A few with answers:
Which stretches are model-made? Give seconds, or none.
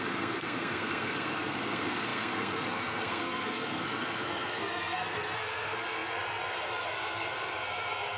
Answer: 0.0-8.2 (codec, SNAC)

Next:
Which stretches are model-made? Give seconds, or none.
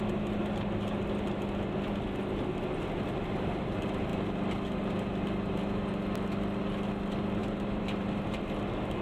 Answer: 7.4-8.4 (vocoder, BigVGAN v2)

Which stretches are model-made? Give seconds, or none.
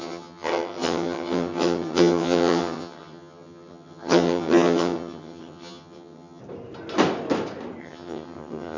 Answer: 0.0-6.4 (vocoder, HiFi-GAN); 7.8-8.8